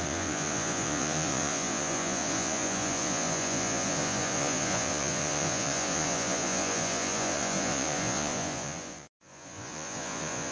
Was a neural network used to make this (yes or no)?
yes